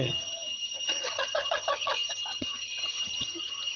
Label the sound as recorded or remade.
remade